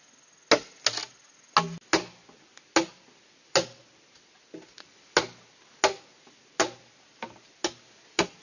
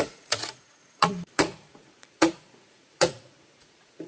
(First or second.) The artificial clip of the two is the second